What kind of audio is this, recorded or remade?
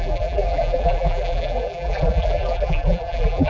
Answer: remade